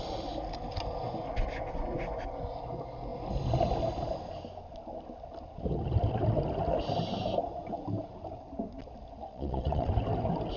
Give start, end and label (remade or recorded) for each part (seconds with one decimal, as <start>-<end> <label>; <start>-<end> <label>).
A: 0.0-9.3 recorded; 9.3-9.9 remade; 9.9-10.6 recorded